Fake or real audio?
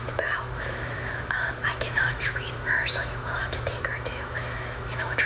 fake